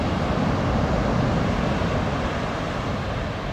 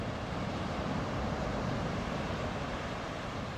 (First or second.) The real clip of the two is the first